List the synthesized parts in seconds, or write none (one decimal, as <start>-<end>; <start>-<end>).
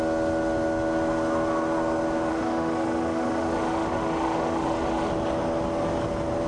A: 2.3-5.1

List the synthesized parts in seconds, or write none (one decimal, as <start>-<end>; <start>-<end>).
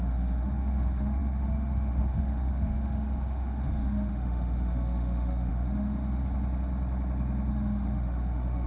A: 0.0-6.2; 7.5-8.7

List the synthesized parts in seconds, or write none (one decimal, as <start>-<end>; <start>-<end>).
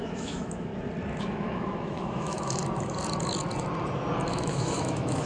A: 0.0-0.7; 1.2-2.6; 4.3-5.3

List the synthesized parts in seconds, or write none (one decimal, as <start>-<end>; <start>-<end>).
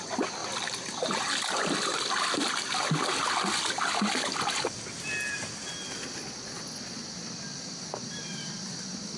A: none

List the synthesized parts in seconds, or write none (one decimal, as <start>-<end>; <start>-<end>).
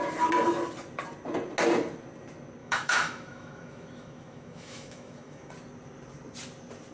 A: 2.6-5.5